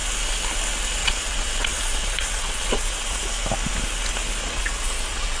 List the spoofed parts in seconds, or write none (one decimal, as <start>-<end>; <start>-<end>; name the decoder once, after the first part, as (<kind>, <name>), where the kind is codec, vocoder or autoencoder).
1.0-3.2 (vocoder, WaveNeXt); 4.4-5.4